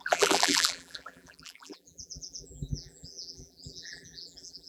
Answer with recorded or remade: remade